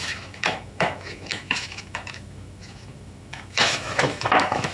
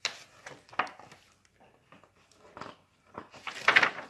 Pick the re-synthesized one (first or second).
first